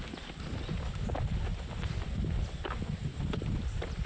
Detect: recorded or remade recorded